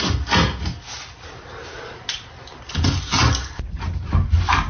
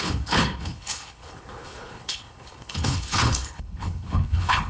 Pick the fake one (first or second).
second